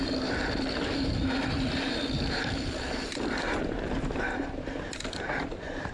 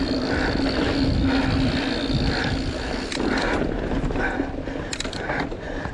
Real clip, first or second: second